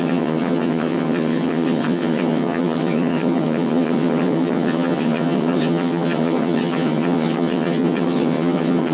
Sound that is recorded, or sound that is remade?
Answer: remade